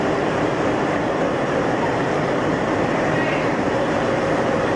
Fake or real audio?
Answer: fake